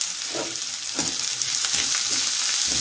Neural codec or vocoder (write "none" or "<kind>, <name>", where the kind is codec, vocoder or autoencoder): none